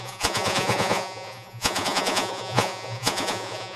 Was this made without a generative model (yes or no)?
no